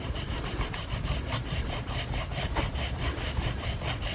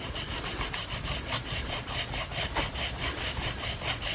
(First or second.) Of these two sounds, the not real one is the first